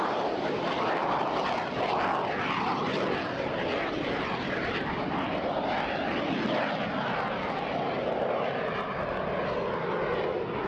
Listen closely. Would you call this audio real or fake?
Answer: real